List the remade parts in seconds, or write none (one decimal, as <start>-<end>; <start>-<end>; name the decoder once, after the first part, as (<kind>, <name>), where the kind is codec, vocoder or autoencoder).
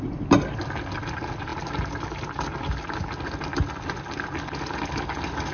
none